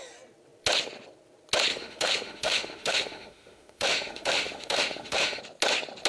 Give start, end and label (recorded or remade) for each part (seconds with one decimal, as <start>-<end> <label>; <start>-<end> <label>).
0.0-1.7 recorded; 1.7-5.4 remade; 5.4-6.1 recorded